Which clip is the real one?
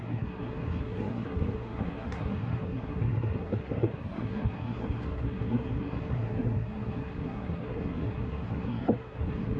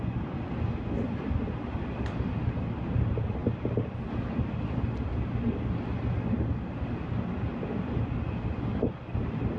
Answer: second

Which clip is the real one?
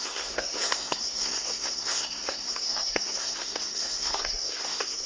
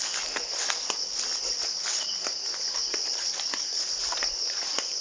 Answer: second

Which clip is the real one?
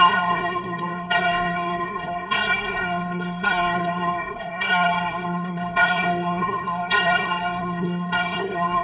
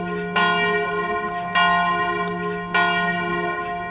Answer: second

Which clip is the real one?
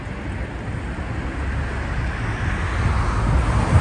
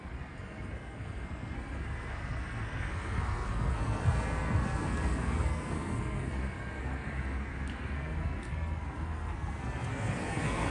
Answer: first